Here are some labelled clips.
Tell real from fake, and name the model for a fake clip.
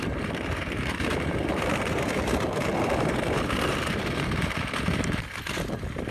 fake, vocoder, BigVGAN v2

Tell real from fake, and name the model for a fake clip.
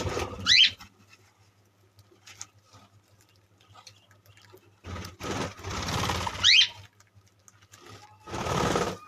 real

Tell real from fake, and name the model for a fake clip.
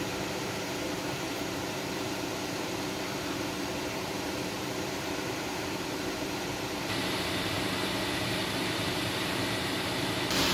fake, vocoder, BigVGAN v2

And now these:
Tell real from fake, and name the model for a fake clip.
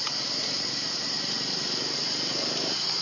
fake, vocoder, BigVGAN v2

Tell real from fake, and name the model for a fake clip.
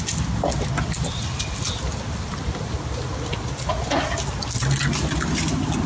real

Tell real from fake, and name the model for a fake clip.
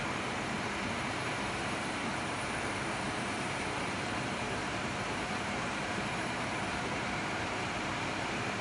fake, vocoder, BigVGAN v2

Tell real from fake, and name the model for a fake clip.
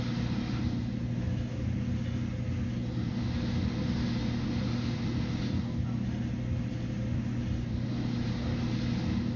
real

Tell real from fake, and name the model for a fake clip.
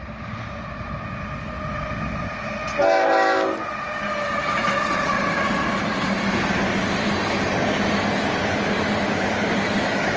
real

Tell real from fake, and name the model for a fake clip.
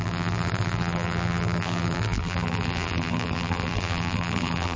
fake, vocoder, BigVGAN v2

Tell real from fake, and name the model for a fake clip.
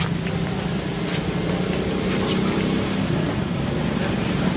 real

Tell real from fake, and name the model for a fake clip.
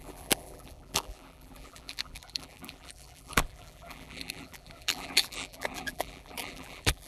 fake, vocoder, BigVGAN v2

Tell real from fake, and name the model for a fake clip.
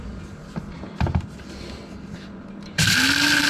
fake, vocoder, BigVGAN v2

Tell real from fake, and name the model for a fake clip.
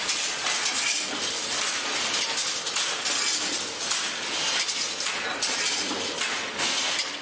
real